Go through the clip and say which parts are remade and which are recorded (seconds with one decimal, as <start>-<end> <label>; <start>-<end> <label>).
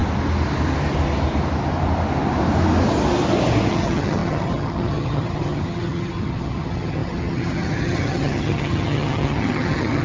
0.0-3.7 recorded; 3.7-10.0 remade